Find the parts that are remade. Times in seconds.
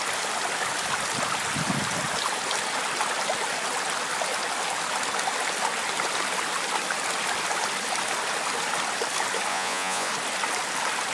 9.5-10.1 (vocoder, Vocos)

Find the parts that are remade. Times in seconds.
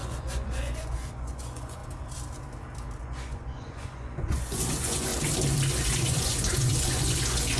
0.0-1.8 (vocoder, Vocos); 3.0-5.1; 5.7-7.6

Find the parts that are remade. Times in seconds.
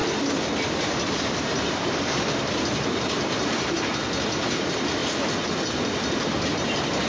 none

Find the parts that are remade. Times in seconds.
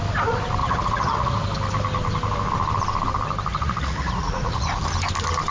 0.6-1.4 (vocoder, Vocos); 3.5-4.8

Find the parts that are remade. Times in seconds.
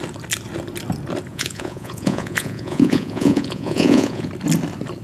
1.3-4.3 (vocoder, Vocos)